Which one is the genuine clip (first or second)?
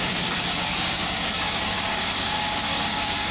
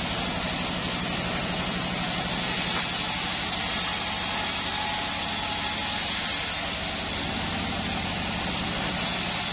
second